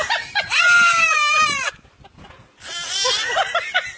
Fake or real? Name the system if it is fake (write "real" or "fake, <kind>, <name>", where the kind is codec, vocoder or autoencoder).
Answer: real